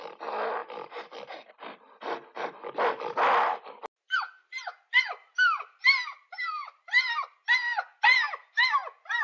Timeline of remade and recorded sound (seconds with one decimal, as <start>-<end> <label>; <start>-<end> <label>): 0.0-9.2 recorded

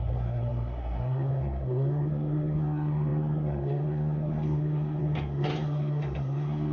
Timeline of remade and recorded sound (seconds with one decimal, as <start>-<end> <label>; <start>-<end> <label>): 0.0-6.7 remade

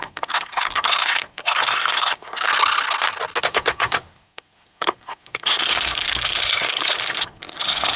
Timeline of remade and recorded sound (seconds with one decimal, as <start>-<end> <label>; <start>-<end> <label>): 0.0-2.5 remade; 2.5-3.4 recorded; 3.4-8.0 remade

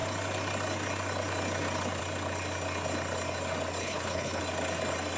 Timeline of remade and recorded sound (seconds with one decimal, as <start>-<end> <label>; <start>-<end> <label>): 0.0-3.8 recorded; 3.8-4.4 remade; 4.4-5.2 recorded